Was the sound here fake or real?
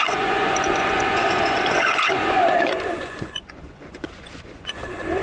fake